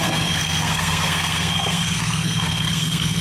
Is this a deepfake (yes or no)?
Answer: yes